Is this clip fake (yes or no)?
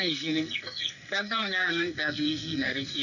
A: yes